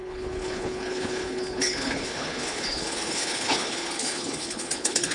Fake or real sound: fake